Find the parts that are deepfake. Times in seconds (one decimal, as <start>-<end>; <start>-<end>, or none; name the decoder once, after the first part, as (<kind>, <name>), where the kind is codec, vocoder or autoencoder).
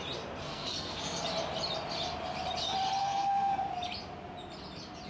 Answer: 0.4-1.2 (codec, SNAC); 3.0-3.5